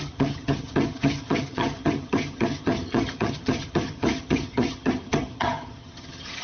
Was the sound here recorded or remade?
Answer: remade